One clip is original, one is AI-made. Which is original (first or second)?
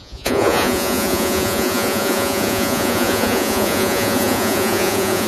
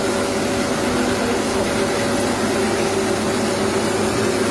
second